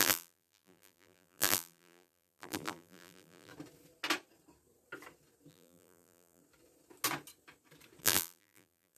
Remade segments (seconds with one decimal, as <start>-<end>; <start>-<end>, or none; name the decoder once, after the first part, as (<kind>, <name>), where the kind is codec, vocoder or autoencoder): 0.0-3.5 (vocoder, BigVGAN v2); 5.5-6.4; 8.0-9.0